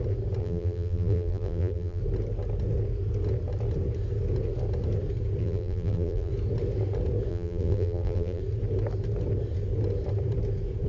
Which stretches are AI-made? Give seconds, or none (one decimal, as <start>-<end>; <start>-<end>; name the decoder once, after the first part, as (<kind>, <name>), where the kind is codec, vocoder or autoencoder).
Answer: 0.4-2.0 (vocoder, BigVGAN v2); 5.4-6.3; 7.3-8.4